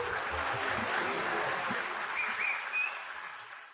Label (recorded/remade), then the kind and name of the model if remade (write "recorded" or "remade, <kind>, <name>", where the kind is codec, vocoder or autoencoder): recorded